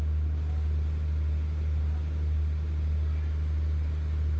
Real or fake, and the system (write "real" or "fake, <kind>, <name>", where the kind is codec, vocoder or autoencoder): real